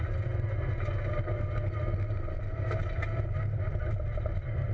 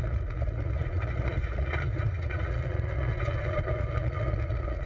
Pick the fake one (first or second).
second